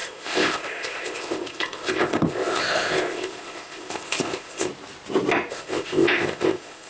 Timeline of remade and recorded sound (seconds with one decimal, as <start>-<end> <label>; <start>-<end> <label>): 0.0-4.7 remade; 4.7-5.5 recorded; 5.5-6.9 remade